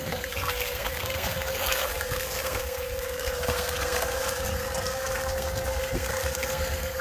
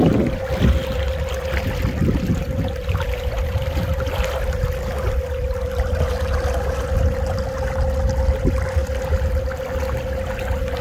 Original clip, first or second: second